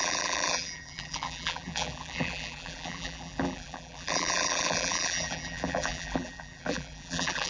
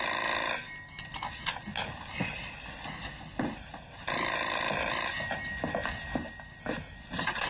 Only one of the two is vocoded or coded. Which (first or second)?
first